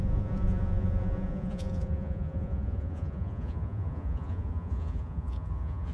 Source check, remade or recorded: remade